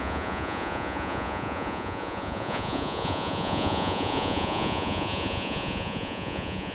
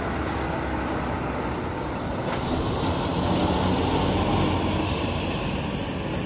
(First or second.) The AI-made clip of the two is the first